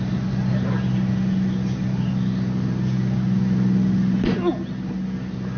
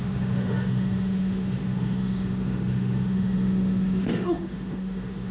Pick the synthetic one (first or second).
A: second